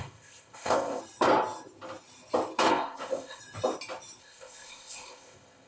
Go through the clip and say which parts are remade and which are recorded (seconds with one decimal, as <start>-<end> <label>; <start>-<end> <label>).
0.0-1.0 remade; 1.0-2.7 recorded; 2.7-3.4 remade; 3.4-4.2 recorded; 4.2-5.7 remade